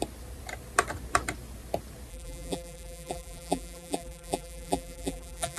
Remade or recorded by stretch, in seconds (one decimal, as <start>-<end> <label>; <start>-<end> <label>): 0.0-2.1 recorded; 2.1-5.6 remade